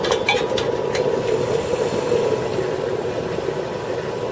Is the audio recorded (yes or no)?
yes